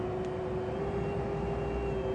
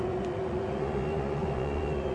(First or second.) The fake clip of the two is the second